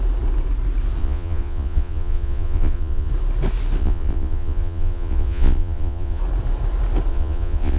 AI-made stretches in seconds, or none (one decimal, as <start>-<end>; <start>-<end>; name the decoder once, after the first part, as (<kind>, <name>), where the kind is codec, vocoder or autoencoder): 1.0-3.1 (vocoder, Vocos); 3.8-6.2; 7.1-7.8

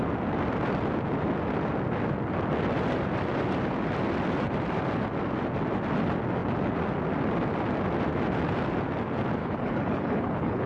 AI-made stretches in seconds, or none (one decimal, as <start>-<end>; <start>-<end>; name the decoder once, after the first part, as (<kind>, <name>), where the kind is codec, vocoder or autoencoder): 9.4-10.7 (codec, HILCodec)

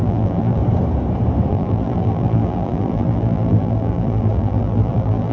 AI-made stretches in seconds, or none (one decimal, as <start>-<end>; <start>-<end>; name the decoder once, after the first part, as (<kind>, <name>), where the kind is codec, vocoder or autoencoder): 0.0-0.6 (vocoder, BigVGAN v2); 1.5-5.3

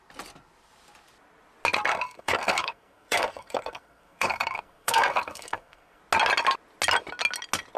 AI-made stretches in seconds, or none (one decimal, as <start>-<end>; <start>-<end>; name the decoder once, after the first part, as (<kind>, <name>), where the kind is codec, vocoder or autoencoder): 1.9-6.0 (codec, SNAC)

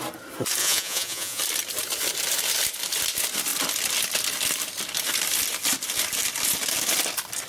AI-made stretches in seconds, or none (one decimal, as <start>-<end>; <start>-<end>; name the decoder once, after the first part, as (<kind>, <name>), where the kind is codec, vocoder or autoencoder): 0.6-1.4 (vocoder, Vocos)